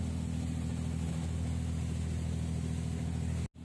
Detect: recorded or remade recorded